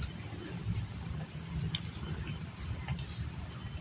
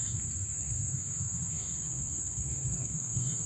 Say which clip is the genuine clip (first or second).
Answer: first